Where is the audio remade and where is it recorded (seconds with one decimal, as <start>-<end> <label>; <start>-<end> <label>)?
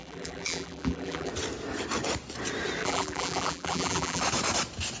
0.0-1.3 remade; 1.3-2.8 recorded; 2.8-4.2 remade; 4.2-5.0 recorded